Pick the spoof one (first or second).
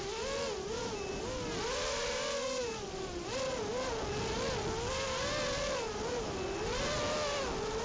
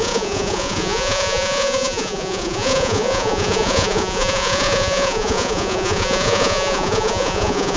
second